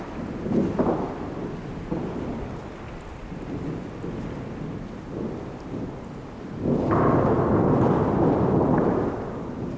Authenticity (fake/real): real